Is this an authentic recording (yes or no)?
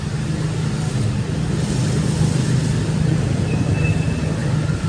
yes